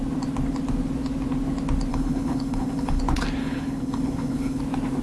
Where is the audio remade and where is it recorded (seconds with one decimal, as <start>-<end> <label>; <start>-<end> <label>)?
0.0-1.9 recorded; 1.9-3.0 remade; 3.0-3.4 recorded; 3.4-4.6 remade; 4.6-5.0 recorded